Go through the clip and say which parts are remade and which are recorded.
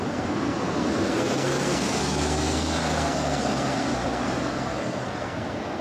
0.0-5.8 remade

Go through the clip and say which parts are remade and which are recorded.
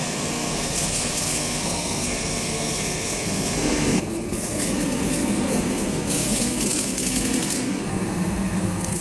0.0-9.0 remade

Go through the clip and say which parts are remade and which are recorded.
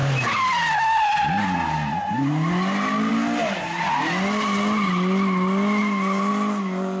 0.0-7.0 recorded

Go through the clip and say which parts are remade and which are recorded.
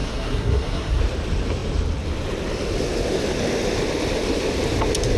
0.0-1.0 remade; 1.0-5.2 recorded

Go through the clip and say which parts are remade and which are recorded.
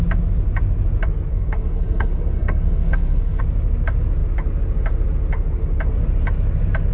0.0-1.3 recorded; 1.3-3.4 remade; 3.4-6.9 recorded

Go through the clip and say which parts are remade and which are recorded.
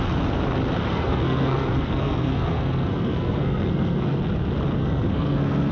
0.0-0.8 recorded; 0.8-4.2 remade; 4.2-4.8 recorded; 4.8-5.7 remade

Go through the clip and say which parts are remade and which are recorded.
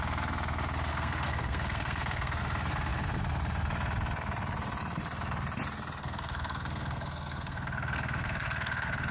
0.0-0.9 recorded; 0.9-2.4 remade; 2.4-6.0 recorded; 6.0-9.1 remade